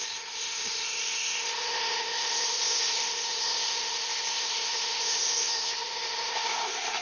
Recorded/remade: remade